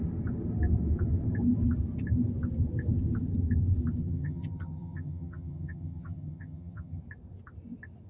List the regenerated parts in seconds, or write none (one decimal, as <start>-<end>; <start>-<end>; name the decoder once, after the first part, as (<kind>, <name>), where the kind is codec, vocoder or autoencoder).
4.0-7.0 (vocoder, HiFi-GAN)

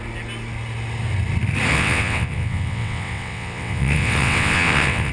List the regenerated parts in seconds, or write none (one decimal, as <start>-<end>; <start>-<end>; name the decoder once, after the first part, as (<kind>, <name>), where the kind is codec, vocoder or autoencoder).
1.7-5.1 (vocoder, WaveNeXt)

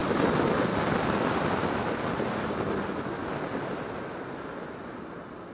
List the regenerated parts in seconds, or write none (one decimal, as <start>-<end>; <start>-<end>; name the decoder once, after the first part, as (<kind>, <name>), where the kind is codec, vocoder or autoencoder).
none

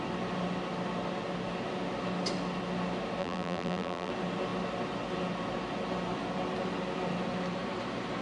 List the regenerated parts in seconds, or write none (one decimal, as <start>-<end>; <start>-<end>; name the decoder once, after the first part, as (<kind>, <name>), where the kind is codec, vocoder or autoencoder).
3.2-4.1 (vocoder, BigVGAN v2)

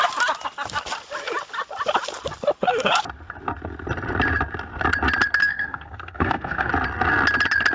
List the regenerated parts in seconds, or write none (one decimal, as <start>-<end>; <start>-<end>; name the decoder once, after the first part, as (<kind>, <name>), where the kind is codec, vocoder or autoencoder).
5.4-6.7 (codec, SNAC)

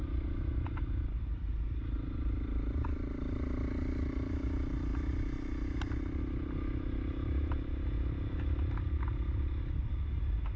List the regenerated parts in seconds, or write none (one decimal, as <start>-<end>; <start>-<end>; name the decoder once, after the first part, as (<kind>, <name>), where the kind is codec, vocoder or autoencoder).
none